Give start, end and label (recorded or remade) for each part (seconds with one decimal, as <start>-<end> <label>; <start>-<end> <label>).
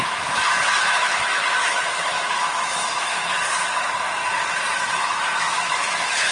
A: 0.0-4.2 remade; 4.2-5.0 recorded; 5.0-6.3 remade